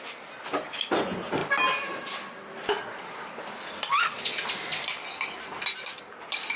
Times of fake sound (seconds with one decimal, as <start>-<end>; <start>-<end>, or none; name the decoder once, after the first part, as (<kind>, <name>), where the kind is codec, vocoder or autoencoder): none